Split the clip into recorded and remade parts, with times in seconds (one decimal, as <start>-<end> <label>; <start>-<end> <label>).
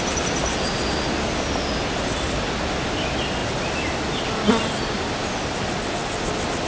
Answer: 0.0-6.7 recorded